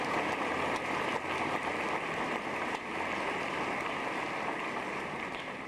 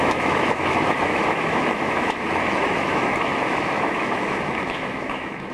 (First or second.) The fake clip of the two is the second